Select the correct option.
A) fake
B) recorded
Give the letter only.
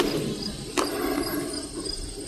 A